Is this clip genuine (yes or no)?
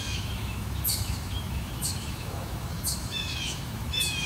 no